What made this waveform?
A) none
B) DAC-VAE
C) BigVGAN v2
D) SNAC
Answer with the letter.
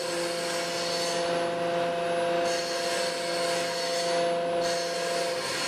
A